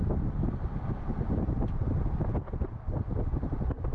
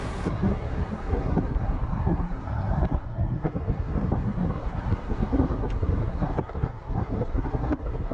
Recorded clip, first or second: first